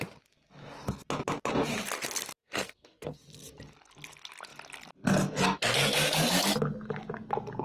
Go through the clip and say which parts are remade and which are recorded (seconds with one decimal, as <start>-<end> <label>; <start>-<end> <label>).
0.0-2.4 recorded; 2.4-3.2 remade; 3.2-7.6 recorded